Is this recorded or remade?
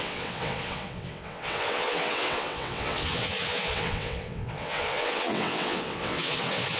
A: remade